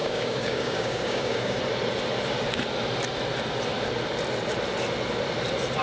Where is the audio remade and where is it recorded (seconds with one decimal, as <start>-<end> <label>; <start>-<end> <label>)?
0.0-1.6 remade; 1.6-5.8 recorded